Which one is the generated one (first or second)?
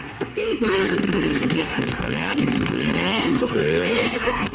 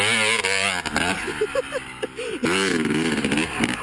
first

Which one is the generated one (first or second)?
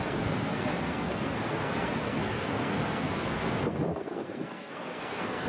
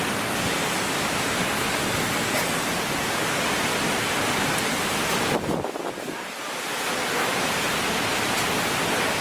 first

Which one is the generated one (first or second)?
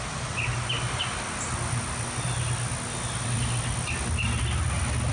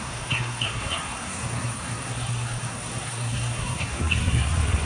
second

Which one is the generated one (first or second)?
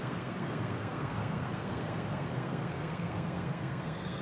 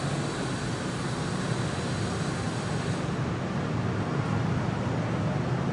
first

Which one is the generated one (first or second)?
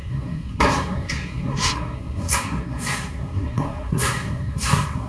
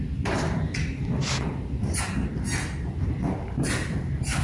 first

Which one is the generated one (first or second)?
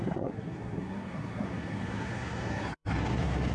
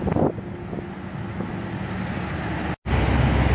first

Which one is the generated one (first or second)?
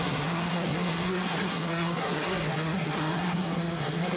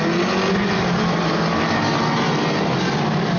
first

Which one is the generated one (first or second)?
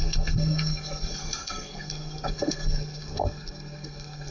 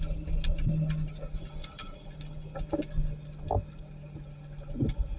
first